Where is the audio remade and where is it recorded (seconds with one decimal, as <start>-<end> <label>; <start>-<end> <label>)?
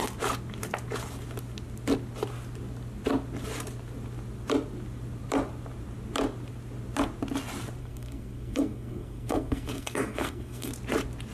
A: 0.0-7.8 recorded; 7.8-10.7 remade; 10.7-11.3 recorded